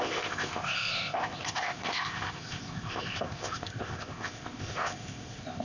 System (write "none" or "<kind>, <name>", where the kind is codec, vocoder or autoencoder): codec, ZipCodec